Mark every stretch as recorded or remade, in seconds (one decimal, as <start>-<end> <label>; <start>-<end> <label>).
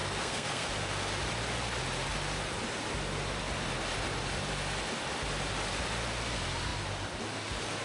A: 0.0-0.7 remade; 0.7-7.8 recorded